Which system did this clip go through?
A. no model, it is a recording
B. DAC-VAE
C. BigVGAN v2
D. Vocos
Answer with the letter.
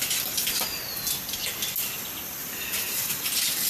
A